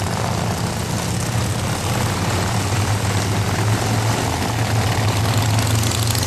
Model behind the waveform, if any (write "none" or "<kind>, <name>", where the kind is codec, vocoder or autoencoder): none